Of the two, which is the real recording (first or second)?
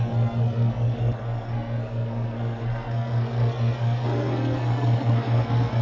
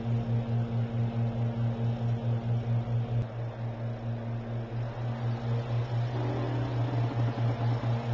second